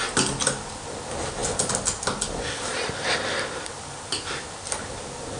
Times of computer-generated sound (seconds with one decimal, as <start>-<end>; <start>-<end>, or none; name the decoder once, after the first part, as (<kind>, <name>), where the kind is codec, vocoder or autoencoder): none